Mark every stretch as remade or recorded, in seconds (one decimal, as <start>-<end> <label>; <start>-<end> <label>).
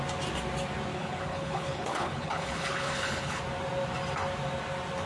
0.0-0.9 recorded; 0.9-3.4 remade; 3.4-5.1 recorded